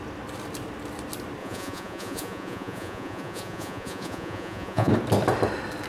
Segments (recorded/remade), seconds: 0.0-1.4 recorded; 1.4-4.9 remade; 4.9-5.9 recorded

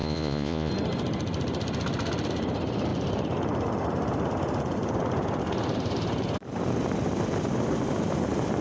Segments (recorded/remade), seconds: 0.0-0.7 remade; 0.7-8.6 recorded

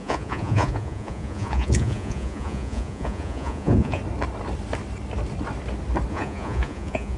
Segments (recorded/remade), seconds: 0.0-4.0 remade; 4.0-6.1 recorded; 6.1-7.2 remade

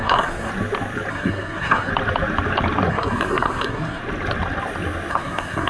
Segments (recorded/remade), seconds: 0.0-0.5 remade; 0.5-1.1 recorded; 1.1-1.9 remade; 1.9-2.9 recorded; 2.9-4.0 remade; 4.0-5.1 recorded; 5.1-5.7 remade

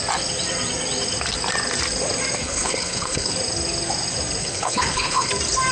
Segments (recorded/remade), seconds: 0.0-2.4 recorded; 2.4-3.3 remade; 3.3-4.4 recorded; 4.4-5.3 remade; 5.3-5.7 recorded

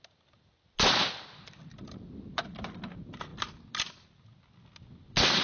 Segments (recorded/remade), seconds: 0.0-5.4 recorded